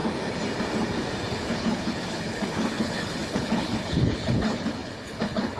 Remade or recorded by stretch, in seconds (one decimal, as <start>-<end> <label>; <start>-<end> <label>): 0.0-1.3 recorded; 1.3-5.6 remade